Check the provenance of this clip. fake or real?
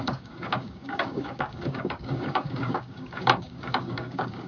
fake